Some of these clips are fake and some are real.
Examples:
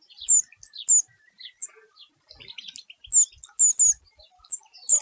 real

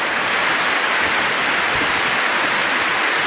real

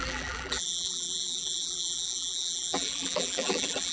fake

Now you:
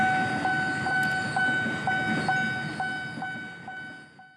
real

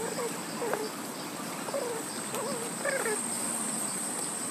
real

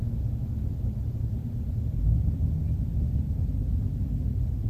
real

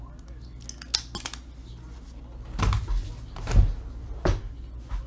real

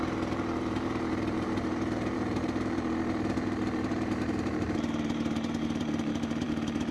fake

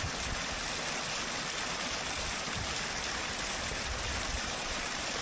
real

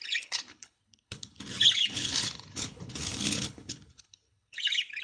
fake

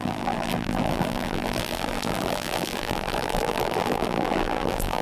fake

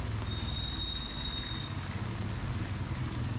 real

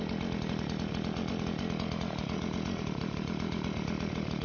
real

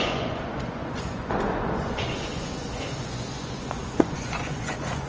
fake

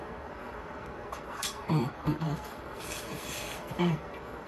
fake